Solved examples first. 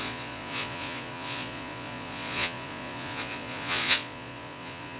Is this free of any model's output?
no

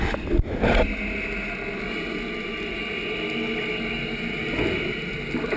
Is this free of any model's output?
yes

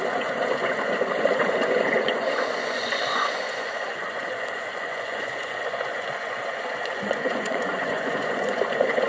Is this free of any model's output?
no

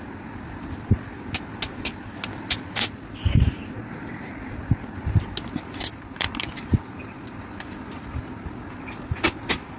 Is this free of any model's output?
yes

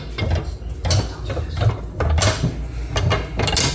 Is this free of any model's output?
yes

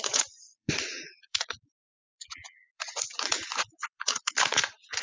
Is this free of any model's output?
no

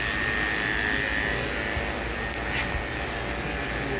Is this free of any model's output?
yes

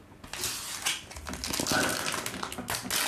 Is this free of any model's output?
yes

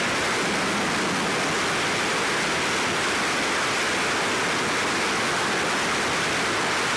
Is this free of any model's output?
yes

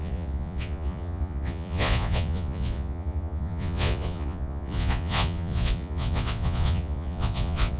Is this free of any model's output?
no